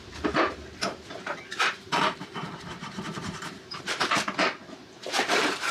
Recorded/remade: remade